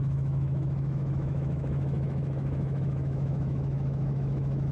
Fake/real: fake